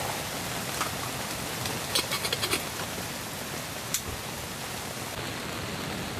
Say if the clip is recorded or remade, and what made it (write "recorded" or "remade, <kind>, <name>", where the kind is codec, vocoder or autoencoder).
recorded